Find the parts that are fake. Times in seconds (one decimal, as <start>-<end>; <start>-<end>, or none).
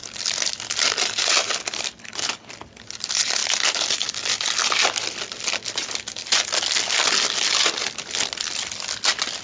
2.0-2.5